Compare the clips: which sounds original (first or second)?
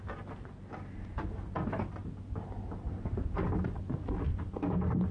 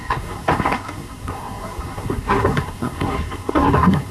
first